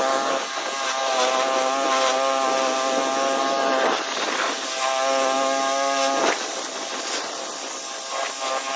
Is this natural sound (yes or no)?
yes